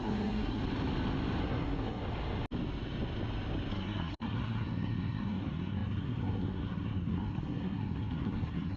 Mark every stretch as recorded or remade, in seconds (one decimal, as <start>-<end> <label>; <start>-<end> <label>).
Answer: 0.0-0.6 remade; 0.6-1.4 recorded; 1.4-2.0 remade; 2.0-3.7 recorded; 3.7-8.8 remade